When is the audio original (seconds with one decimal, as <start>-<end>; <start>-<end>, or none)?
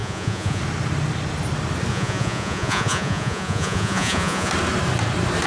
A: 0.6-1.9; 4.5-5.5